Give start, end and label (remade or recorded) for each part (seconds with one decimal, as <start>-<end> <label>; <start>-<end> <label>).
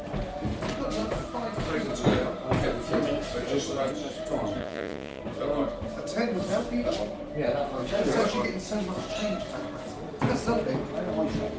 0.0-4.6 recorded; 4.6-5.2 remade; 5.2-11.6 recorded